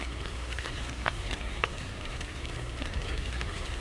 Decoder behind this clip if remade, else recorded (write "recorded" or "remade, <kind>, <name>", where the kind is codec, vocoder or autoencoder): remade, codec, SNAC